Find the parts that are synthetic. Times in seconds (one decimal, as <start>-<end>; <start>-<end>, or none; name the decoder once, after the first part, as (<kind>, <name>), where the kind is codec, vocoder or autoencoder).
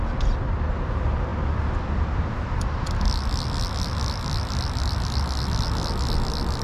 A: none